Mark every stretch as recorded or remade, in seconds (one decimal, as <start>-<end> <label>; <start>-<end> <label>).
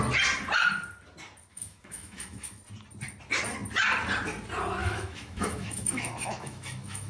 0.0-1.5 recorded; 1.5-2.6 remade; 2.6-4.8 recorded; 4.8-7.1 remade